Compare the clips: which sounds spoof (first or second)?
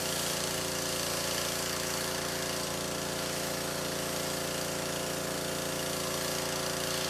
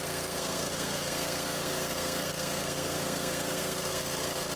second